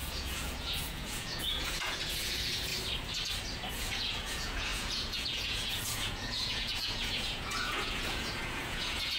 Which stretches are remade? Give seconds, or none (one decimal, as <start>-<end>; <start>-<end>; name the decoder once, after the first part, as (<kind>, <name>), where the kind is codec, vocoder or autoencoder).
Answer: 0.0-2.7 (vocoder, Vocos); 3.7-9.2